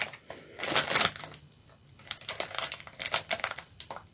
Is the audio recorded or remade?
recorded